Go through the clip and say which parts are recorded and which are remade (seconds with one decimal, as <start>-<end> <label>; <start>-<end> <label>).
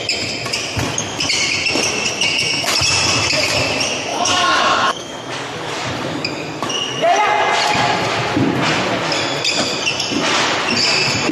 0.0-4.1 recorded; 4.1-6.7 remade; 6.7-11.3 recorded